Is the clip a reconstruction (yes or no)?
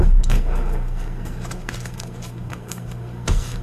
yes